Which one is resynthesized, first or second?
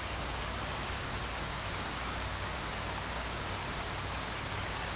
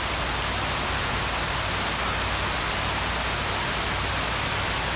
first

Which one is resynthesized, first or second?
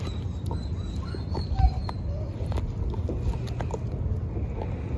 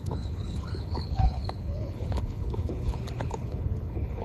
second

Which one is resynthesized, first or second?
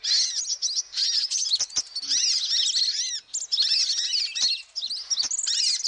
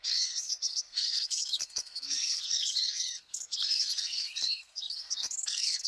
second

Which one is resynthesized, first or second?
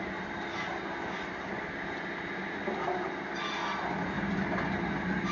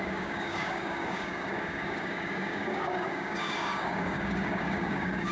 second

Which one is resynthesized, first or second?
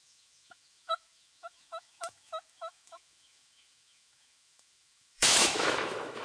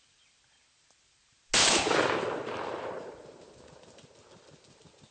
first